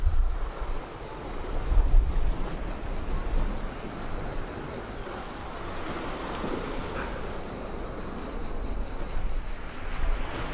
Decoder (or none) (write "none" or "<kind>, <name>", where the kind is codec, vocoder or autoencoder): none